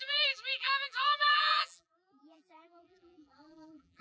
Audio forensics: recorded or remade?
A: remade